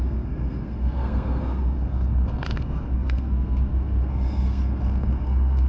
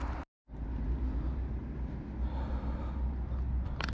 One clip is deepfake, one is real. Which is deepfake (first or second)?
first